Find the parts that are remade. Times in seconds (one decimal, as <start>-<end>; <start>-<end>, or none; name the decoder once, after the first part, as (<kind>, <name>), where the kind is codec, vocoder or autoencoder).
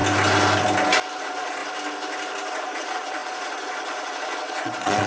1.2-1.6 (vocoder, Vocos); 2.5-5.1